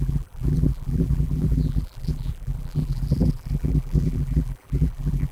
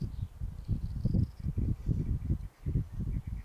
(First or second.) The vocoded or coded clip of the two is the first